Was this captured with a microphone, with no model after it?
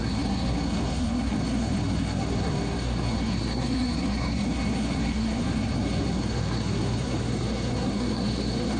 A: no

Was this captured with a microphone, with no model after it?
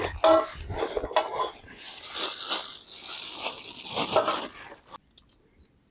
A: yes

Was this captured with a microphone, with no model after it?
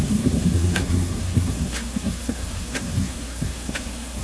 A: no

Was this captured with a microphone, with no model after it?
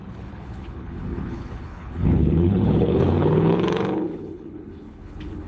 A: no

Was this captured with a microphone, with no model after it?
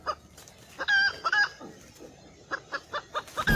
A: yes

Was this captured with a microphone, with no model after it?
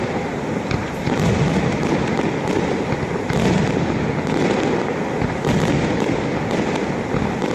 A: yes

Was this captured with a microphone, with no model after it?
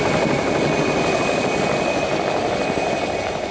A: yes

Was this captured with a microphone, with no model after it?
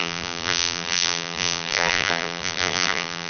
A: no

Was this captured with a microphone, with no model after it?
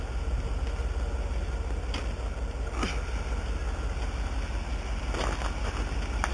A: yes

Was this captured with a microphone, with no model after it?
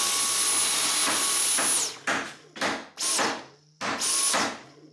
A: yes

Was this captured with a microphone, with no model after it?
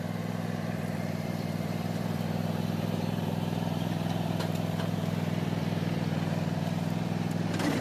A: no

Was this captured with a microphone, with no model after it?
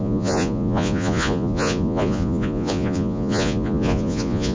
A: no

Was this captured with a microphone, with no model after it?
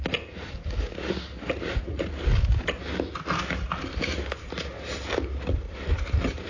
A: yes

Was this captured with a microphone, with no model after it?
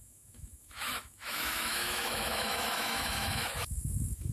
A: no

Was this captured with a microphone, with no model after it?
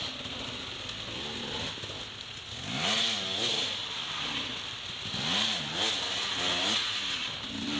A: yes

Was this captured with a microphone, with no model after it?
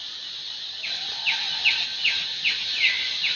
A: yes